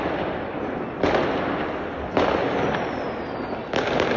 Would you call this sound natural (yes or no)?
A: yes